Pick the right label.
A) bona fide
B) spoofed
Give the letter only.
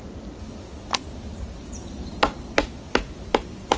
A